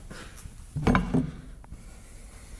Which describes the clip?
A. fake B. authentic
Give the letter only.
B